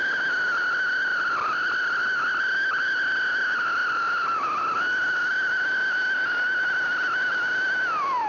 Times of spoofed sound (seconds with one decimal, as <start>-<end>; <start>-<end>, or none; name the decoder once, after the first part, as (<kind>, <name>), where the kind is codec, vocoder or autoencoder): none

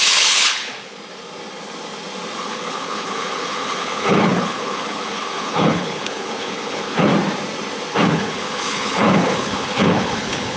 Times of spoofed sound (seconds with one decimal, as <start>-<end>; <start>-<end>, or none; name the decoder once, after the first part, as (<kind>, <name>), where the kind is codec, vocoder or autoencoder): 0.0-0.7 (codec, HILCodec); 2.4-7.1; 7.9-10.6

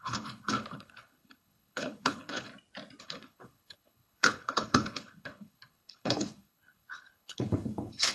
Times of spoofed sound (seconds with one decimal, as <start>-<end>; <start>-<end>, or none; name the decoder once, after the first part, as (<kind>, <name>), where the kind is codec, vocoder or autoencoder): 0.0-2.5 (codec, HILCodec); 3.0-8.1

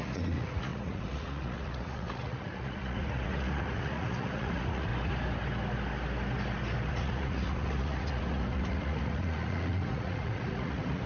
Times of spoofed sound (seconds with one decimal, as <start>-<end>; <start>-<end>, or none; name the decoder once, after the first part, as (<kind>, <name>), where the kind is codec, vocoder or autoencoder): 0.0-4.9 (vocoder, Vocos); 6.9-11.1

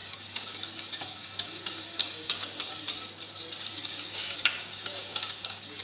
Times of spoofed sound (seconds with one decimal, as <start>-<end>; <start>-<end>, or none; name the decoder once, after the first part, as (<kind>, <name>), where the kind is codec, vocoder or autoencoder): 0.0-2.8 (codec, DAC); 3.7-5.8

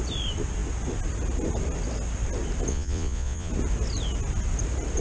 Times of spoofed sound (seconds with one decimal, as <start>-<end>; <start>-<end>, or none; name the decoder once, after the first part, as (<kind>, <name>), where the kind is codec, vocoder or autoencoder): 2.7-3.5 (vocoder, Vocos)

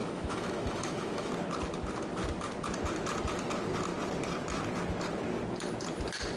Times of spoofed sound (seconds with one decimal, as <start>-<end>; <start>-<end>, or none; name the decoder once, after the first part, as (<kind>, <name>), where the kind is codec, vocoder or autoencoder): 0.0-1.3 (autoencoder, DAC-VAE)

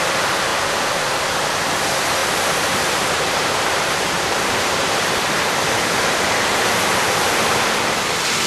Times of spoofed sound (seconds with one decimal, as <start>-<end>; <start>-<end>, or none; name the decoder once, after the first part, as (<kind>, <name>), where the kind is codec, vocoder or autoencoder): 2.2-7.2 (vocoder, BigVGAN v2)